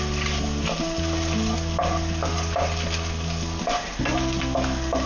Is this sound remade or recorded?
recorded